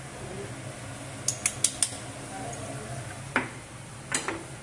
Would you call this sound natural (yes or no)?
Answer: yes